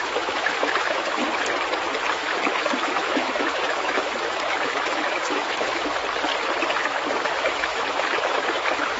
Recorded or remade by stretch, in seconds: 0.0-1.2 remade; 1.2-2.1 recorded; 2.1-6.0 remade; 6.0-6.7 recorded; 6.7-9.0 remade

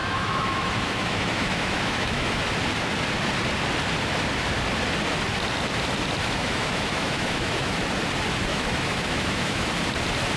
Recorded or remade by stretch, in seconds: 0.0-2.4 remade; 2.4-6.2 recorded; 6.2-7.8 remade; 7.8-8.5 recorded; 8.5-9.7 remade; 9.7-10.4 recorded

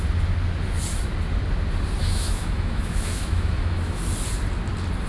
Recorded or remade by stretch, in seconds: 0.0-2.0 recorded; 2.0-4.0 remade; 4.0-5.1 recorded

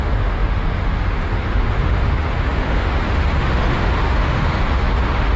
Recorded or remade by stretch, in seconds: 0.0-5.4 remade

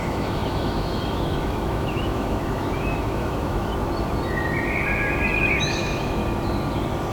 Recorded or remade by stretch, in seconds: 0.0-3.7 remade; 3.7-5.5 recorded; 5.5-6.2 remade; 6.2-7.1 recorded

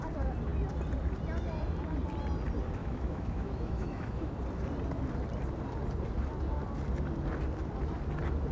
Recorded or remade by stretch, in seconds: 0.0-2.8 recorded; 2.8-4.3 remade; 4.3-8.5 recorded

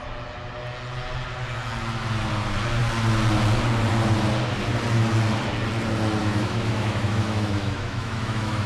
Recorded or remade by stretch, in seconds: 0.0-6.2 recorded; 6.2-8.7 remade

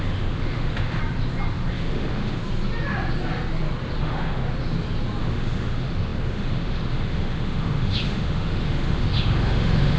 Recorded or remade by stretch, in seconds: 0.0-1.0 remade; 1.0-1.7 recorded; 1.7-2.4 remade; 2.4-4.0 recorded; 4.0-4.4 remade; 4.4-5.2 recorded; 5.2-10.0 remade